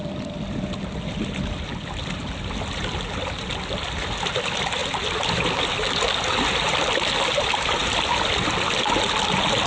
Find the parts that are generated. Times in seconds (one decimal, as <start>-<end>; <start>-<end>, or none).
none